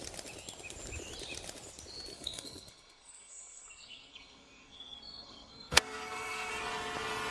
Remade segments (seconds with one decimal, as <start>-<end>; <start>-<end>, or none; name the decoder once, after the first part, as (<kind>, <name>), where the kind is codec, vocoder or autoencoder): 2.1-6.5 (codec, SNAC)